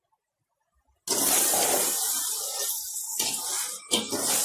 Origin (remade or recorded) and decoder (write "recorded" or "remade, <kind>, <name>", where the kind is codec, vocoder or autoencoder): recorded